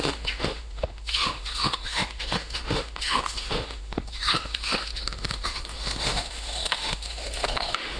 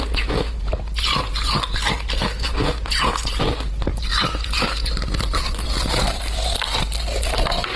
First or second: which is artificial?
first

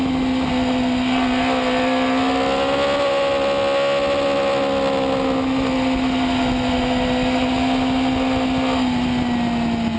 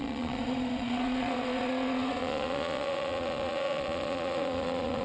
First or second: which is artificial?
second